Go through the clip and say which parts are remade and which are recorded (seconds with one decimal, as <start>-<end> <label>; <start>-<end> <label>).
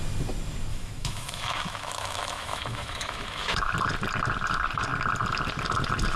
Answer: 0.0-0.7 recorded; 0.7-3.7 remade; 3.7-6.2 recorded